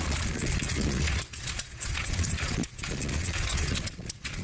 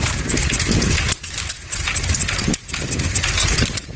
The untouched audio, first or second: second